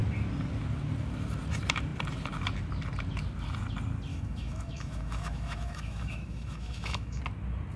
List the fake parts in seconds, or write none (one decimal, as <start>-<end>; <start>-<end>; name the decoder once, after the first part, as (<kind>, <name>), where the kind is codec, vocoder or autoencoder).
4.1-7.2 (autoencoder, DAC-VAE)